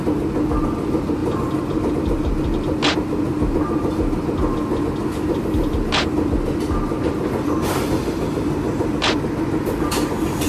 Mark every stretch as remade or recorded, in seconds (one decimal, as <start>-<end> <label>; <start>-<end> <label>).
0.0-10.5 recorded